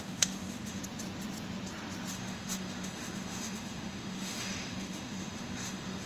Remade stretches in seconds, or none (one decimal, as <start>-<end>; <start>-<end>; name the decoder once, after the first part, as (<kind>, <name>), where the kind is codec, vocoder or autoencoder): 0.0-0.8 (autoencoder, DAC-VAE); 2.1-6.1